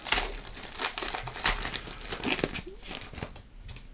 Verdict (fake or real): real